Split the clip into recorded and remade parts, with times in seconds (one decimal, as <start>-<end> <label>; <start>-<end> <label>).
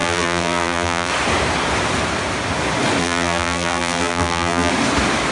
0.0-1.1 remade; 1.1-3.0 recorded; 3.0-4.7 remade; 4.7-5.3 recorded